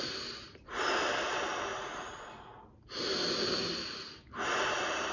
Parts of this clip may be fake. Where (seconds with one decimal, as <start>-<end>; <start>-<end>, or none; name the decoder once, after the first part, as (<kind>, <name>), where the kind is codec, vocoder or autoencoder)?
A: 1.7-2.6 (vocoder, Vocos)